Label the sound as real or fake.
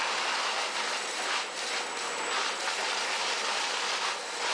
real